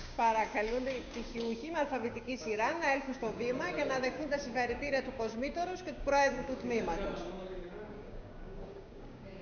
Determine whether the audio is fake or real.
fake